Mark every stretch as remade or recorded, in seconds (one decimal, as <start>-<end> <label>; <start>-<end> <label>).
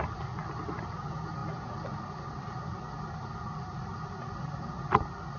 0.0-5.4 recorded